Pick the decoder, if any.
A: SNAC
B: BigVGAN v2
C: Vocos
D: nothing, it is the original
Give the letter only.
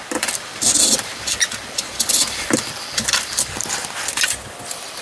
B